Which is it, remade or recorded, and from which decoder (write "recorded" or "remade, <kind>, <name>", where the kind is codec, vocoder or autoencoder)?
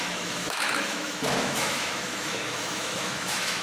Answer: remade, autoencoder, DAC-VAE